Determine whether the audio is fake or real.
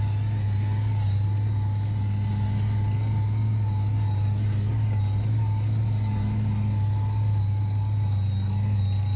real